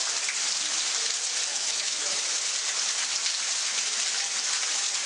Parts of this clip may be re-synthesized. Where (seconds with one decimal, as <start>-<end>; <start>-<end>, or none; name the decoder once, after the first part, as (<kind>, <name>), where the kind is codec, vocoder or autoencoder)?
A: 1.5-2.2 (autoencoder, DAC-VAE)